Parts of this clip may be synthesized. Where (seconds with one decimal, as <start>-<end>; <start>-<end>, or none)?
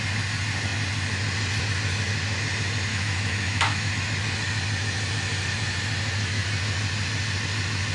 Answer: 2.9-3.9